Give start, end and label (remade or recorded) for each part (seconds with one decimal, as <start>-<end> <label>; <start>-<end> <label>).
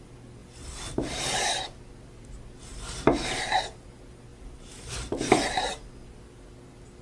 0.0-0.4 recorded; 0.4-2.4 remade; 2.4-4.3 recorded; 4.3-5.9 remade; 5.9-7.0 recorded